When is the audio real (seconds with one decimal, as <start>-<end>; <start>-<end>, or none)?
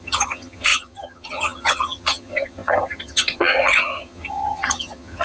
none